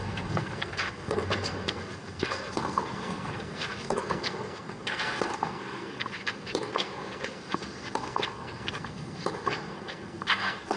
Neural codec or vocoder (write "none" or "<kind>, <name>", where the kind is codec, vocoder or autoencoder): codec, SNAC